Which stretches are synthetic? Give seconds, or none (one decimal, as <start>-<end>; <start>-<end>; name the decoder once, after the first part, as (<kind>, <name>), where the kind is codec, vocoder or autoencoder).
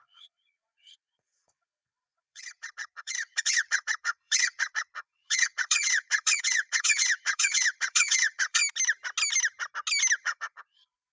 0.0-8.6 (vocoder, WaveNeXt); 10.2-11.1